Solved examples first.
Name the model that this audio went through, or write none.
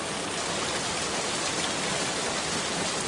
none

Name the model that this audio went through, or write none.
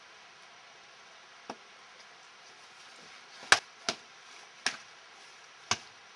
none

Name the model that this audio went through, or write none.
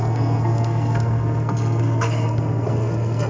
codec, SNAC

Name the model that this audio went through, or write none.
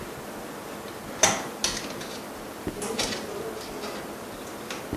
none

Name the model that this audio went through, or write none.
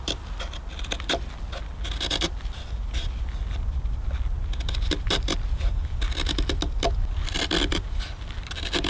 none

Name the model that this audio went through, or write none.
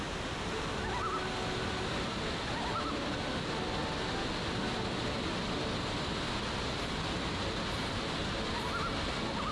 none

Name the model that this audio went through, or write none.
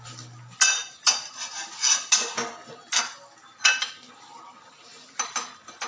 none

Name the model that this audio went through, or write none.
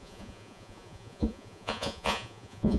vocoder, Vocos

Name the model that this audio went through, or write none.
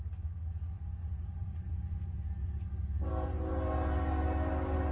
none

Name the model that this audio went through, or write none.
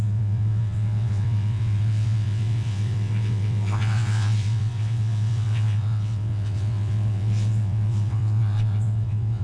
vocoder, WaveNeXt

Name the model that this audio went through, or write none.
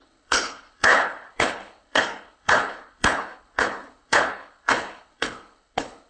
codec, HILCodec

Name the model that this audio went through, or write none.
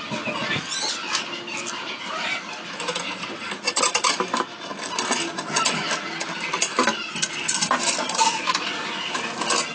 none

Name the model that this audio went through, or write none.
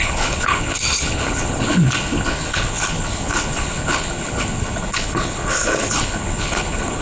codec, HILCodec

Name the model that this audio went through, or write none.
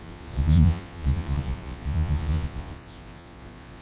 vocoder, Vocos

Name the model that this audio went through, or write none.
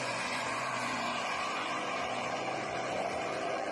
vocoder, Vocos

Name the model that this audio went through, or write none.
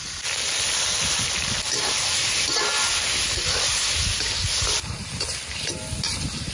none